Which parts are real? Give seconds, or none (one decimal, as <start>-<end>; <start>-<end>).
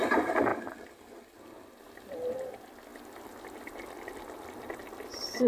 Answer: 0.0-5.5